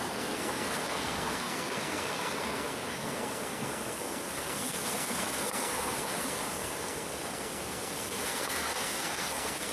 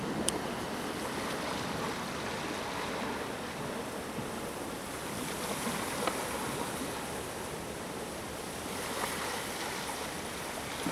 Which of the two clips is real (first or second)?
second